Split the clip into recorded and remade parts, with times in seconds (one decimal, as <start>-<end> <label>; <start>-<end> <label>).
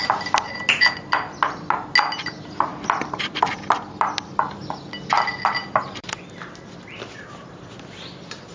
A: 0.0-2.7 recorded; 2.7-3.4 remade; 3.4-5.6 recorded; 5.6-7.1 remade; 7.1-8.5 recorded